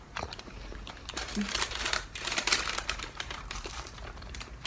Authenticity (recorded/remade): remade